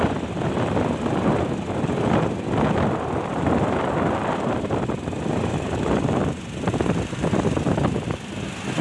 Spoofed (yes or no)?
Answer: no